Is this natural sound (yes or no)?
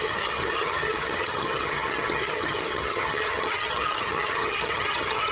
no